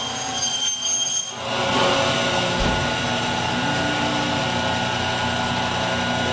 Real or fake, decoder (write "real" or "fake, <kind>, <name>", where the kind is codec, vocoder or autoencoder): real